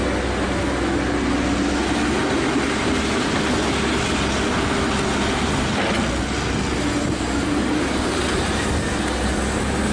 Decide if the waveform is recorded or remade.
recorded